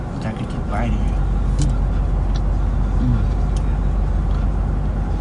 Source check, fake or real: real